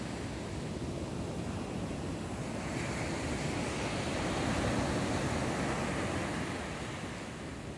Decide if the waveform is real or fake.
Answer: real